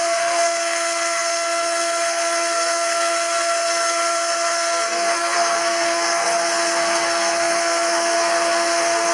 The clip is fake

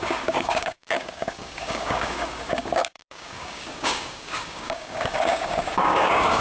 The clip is fake